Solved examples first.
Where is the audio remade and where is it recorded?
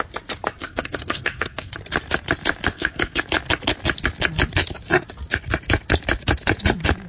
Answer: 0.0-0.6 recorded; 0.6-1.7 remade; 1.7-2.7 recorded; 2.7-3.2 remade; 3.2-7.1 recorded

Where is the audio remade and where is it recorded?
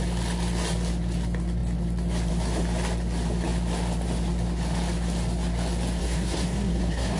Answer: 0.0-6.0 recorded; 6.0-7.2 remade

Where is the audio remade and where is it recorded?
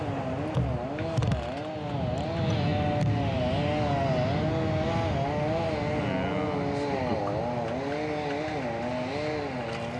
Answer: 0.0-10.0 recorded